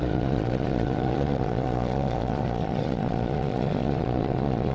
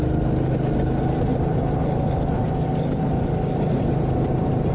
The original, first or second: second